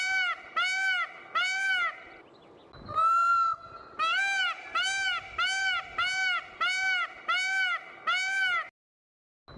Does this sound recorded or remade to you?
recorded